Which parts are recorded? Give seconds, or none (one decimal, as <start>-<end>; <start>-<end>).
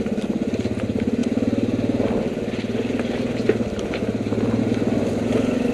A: 0.0-5.7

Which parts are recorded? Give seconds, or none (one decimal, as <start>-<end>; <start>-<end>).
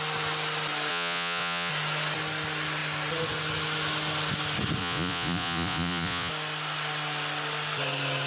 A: 0.0-0.9; 1.7-4.8; 6.3-8.3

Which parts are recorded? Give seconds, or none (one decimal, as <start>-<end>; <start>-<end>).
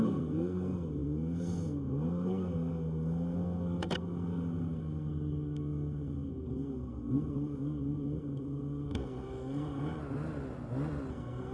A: 10.0-11.1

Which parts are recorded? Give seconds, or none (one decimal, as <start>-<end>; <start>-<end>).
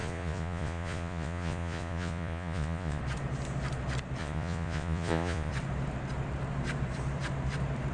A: 3.0-4.2; 5.5-7.9